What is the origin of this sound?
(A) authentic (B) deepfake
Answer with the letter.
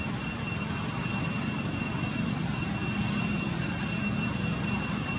A